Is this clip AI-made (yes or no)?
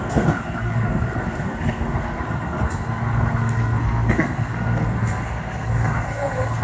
yes